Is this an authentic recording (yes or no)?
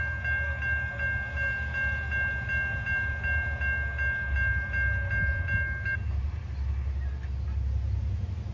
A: yes